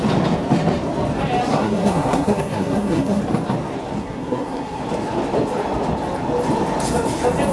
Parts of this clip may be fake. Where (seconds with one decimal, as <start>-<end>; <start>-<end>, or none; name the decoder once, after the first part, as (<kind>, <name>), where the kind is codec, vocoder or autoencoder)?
1.5-3.2 (codec, SNAC); 4.0-4.8